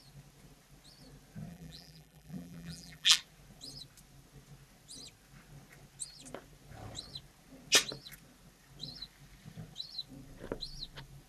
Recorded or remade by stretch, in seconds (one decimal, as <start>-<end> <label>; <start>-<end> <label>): 0.0-1.5 recorded; 1.5-3.2 remade; 3.2-11.3 recorded